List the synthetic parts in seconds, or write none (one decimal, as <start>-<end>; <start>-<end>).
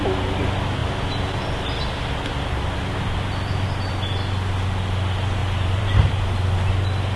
5.4-6.1